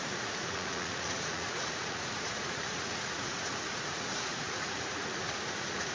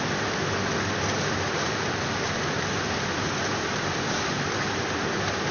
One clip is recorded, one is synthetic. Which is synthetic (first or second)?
first